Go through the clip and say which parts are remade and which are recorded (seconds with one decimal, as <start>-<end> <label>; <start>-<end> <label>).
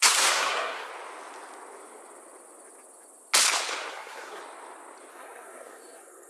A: 0.0-0.9 remade; 0.9-3.9 recorded; 3.9-4.4 remade; 4.4-5.1 recorded; 5.1-6.3 remade